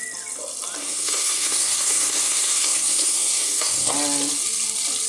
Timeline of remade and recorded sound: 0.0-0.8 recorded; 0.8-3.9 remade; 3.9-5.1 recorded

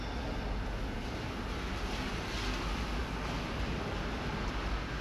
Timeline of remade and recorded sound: 0.0-5.0 recorded

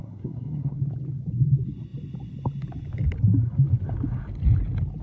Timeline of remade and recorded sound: 0.0-0.8 remade; 0.8-5.0 recorded

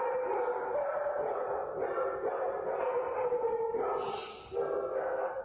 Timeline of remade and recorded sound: 0.0-4.4 recorded; 4.4-5.4 remade

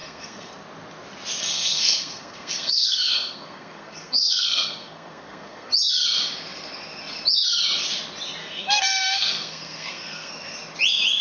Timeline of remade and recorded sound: 0.0-0.5 remade; 0.5-1.4 recorded; 1.4-5.7 remade; 5.7-8.4 recorded; 8.4-10.3 remade; 10.3-11.2 recorded

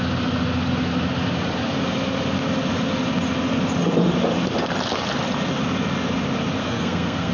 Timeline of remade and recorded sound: 0.0-6.6 recorded; 6.6-7.3 remade